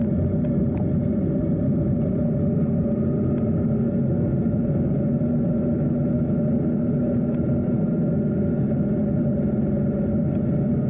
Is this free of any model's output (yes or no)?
yes